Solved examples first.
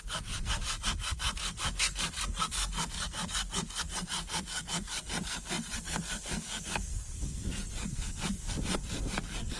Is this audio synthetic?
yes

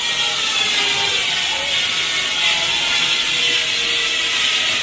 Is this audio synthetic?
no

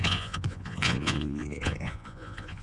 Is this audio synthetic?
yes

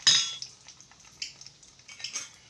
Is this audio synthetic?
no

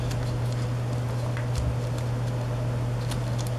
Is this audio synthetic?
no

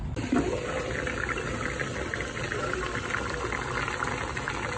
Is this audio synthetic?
no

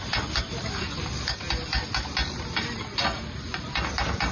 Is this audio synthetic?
no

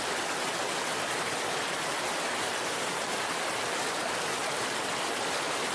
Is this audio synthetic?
no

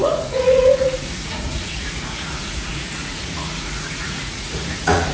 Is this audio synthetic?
yes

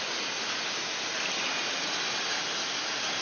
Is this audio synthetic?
no